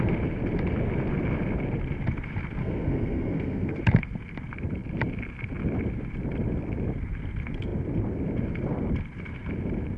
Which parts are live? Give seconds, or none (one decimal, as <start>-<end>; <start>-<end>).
0.0-2.6; 3.8-10.0